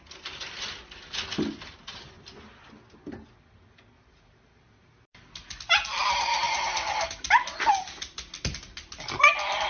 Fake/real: real